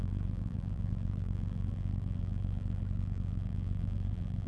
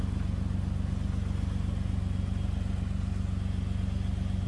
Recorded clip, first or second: second